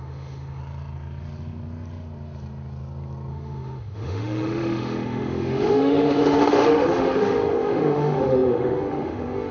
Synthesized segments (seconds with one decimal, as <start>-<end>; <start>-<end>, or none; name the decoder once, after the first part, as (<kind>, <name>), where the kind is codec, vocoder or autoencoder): 0.0-0.6 (autoencoder, DAC-VAE); 3.3-9.5